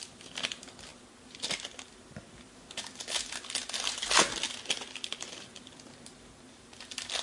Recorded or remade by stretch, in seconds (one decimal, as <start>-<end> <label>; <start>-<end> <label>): 0.0-7.2 recorded